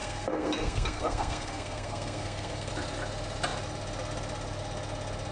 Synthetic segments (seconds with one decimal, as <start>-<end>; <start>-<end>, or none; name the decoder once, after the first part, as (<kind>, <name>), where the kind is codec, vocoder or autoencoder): 0.0-2.7 (codec, SNAC)